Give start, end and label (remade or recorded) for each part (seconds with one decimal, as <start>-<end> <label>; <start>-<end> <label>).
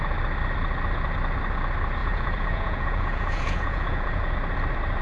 0.0-2.0 recorded; 2.0-4.2 remade; 4.2-5.0 recorded